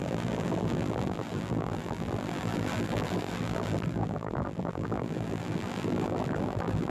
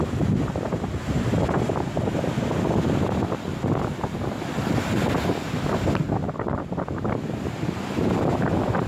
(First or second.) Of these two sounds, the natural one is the second